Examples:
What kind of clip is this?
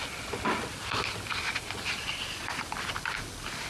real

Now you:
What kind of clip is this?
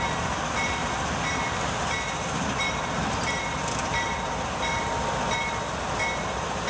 real